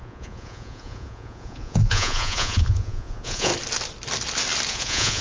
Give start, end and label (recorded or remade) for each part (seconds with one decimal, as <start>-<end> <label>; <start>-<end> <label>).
0.0-3.5 remade; 3.5-4.7 recorded; 4.7-5.2 remade